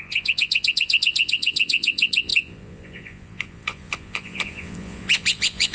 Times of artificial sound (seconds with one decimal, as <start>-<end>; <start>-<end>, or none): 0.0-5.7